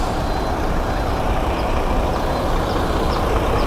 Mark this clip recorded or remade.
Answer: remade